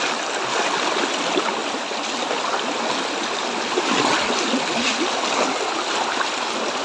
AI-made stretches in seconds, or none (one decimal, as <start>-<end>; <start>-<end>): none